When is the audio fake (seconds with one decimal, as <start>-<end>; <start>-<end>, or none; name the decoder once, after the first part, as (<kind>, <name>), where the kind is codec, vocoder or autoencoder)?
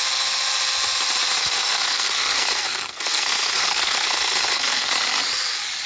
1.4-4.9 (codec, SNAC)